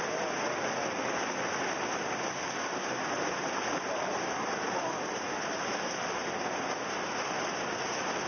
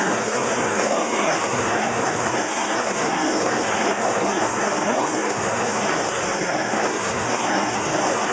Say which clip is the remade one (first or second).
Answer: second